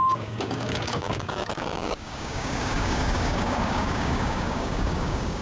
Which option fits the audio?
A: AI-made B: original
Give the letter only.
A